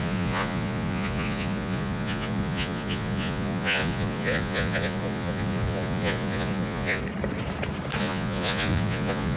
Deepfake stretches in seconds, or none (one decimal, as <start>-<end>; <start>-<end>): 0.0-7.0; 8.0-9.4